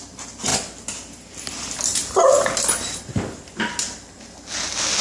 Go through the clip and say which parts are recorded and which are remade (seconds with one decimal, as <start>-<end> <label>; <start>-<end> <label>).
0.0-5.0 recorded